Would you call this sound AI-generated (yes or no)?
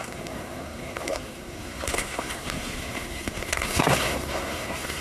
yes